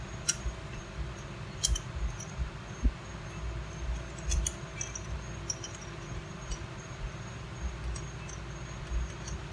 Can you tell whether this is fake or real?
real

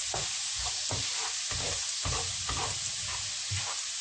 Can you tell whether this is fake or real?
real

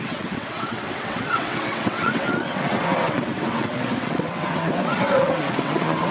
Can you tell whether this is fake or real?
fake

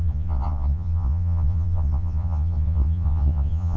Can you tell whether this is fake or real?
fake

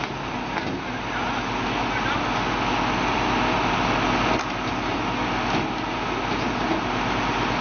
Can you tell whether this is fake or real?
real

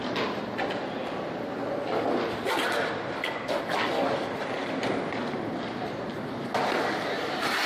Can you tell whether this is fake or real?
real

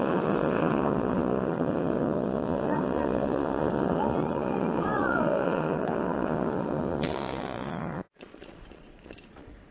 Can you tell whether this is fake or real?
fake